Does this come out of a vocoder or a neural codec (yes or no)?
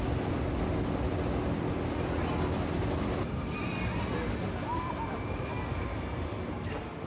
no